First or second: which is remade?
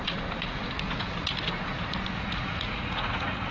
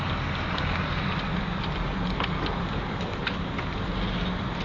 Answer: first